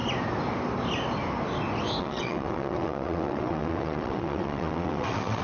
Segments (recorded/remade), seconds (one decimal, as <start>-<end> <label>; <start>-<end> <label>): 0.0-2.0 recorded; 2.0-5.4 remade